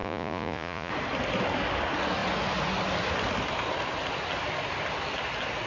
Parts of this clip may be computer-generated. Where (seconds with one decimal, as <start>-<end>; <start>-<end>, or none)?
0.0-0.9